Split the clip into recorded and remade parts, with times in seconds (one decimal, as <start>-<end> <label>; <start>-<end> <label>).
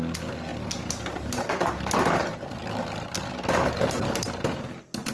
0.0-5.1 recorded